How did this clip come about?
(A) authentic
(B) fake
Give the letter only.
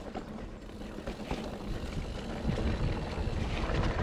A